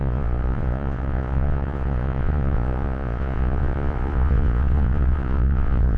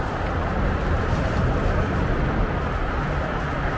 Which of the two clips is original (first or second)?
second